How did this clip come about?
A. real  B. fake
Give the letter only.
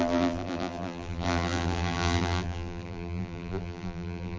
B